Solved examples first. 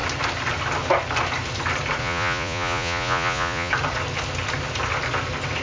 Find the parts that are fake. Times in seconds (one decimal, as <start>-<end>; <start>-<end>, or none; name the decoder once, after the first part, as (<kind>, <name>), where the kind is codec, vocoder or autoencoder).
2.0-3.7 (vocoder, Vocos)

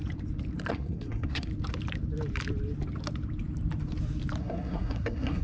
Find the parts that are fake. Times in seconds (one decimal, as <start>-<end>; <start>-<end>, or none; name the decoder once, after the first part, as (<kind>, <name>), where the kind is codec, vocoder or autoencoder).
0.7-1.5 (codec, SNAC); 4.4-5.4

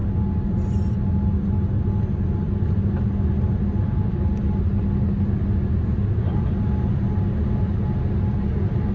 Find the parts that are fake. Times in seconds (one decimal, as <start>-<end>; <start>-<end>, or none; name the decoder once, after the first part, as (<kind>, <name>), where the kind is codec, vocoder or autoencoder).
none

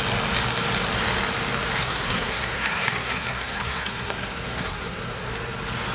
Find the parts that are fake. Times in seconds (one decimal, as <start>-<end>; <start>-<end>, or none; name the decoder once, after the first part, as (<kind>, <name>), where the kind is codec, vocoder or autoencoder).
1.8-5.3 (codec, SNAC)

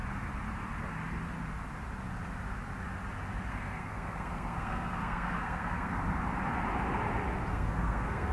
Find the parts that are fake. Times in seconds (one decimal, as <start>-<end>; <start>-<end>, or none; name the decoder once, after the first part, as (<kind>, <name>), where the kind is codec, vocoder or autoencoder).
3.5-5.9 (codec, SNAC); 7.5-8.3